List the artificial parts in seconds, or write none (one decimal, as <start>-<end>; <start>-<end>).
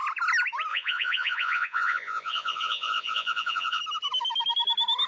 0.7-3.8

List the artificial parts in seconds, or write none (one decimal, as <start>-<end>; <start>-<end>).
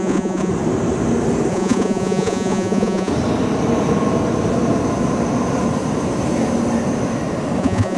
0.0-0.5; 1.5-3.1; 7.6-8.0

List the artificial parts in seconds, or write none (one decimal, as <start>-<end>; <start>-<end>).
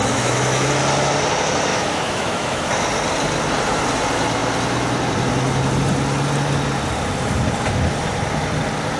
0.0-0.7; 1.7-2.7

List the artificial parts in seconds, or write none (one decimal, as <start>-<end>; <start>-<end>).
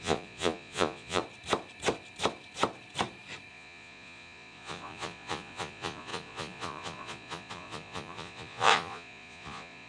0.0-1.2; 3.5-9.9